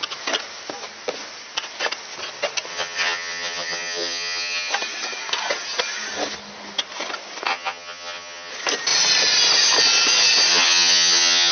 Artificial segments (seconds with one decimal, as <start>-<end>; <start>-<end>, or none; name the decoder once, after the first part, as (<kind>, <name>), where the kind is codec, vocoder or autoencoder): 2.7-4.7 (vocoder, HiFi-GAN); 7.5-8.5; 10.5-11.5